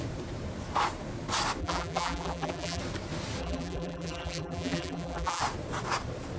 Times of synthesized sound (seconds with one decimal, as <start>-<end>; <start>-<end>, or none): 1.6-2.8; 3.4-5.4

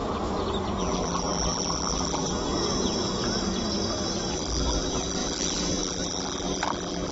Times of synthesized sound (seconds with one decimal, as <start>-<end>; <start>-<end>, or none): 0.8-2.3; 4.3-7.1

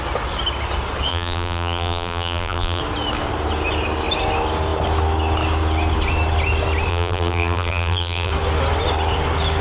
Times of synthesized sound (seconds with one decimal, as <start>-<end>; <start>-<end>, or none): 1.1-2.8; 6.9-8.3

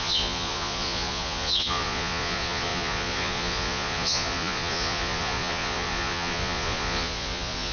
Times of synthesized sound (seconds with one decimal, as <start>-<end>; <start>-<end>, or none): 0.0-7.7